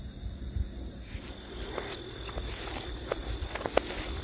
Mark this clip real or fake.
real